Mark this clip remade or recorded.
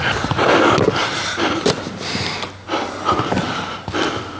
recorded